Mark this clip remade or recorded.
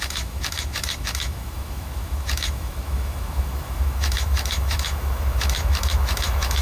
remade